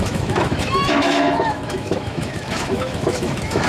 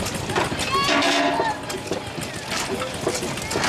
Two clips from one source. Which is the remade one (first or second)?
first